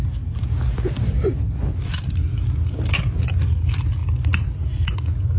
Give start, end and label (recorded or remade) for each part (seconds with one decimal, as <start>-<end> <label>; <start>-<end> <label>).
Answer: 0.0-5.4 recorded